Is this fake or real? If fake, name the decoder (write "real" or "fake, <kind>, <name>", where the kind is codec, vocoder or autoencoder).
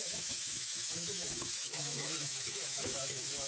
fake, autoencoder, DAC-VAE